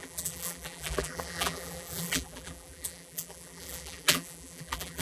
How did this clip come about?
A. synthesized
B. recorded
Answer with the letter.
A